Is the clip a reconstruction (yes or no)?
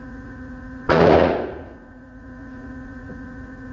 yes